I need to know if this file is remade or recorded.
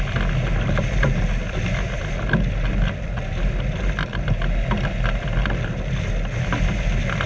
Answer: recorded